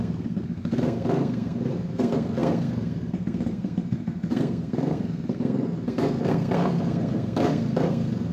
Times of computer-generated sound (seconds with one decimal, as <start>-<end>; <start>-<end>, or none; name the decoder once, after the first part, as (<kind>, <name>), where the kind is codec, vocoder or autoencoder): 0.0-8.3 (codec, SNAC)